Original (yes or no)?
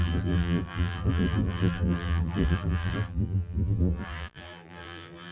no